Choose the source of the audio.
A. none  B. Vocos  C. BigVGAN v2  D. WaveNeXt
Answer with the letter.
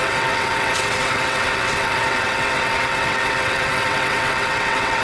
D